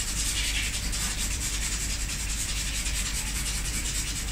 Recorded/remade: remade